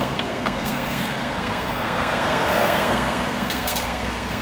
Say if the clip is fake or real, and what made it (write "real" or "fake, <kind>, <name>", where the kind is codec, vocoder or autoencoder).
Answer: fake, codec, SNAC